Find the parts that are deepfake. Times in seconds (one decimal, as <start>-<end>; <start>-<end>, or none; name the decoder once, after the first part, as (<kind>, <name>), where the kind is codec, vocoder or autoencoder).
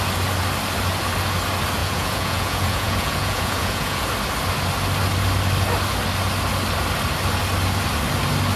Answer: 1.8-4.0 (vocoder, Vocos)